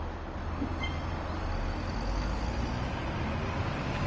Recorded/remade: recorded